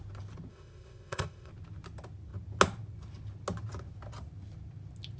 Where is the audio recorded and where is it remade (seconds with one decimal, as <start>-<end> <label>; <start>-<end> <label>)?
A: 0.0-0.5 recorded; 0.5-1.5 remade; 1.5-5.2 recorded